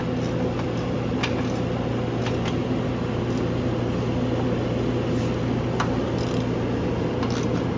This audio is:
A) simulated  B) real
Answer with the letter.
B